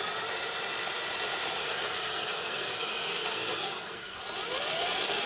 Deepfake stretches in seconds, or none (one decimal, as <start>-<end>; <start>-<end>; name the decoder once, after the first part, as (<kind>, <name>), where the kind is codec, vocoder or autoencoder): 1.6-4.2 (codec, SNAC)